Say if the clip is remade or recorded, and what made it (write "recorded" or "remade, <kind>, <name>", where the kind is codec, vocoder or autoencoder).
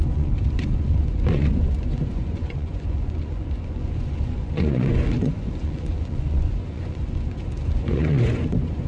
remade, vocoder, Vocos